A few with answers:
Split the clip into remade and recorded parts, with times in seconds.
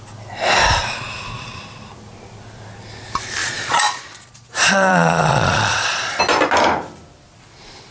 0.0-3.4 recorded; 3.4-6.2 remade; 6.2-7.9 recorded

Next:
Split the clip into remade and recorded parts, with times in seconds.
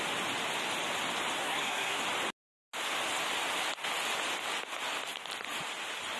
0.0-1.4 recorded; 1.4-2.0 remade; 2.0-6.2 recorded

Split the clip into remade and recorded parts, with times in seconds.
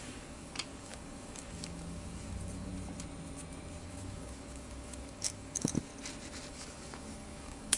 0.0-2.7 remade; 2.7-3.8 recorded; 3.8-5.9 remade; 5.9-6.5 recorded; 6.5-7.8 remade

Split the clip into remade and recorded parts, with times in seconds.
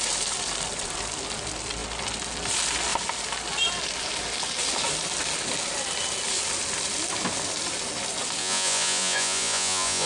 0.0-8.4 recorded; 8.4-10.1 remade